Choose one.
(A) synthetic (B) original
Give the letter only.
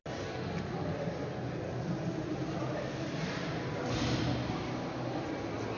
B